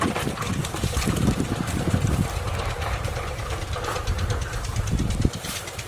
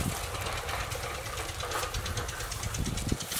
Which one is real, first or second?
second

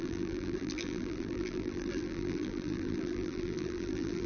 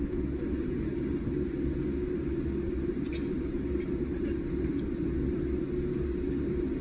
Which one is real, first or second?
second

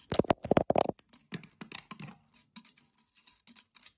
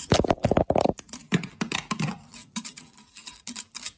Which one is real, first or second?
first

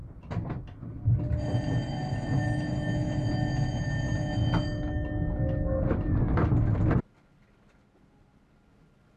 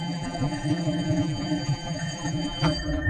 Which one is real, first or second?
first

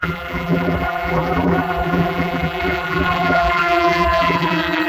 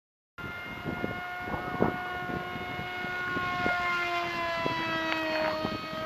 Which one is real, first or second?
second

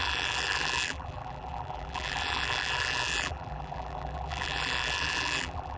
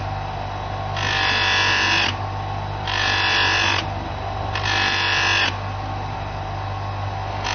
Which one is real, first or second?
second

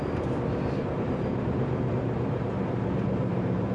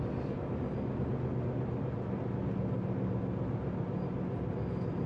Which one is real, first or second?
second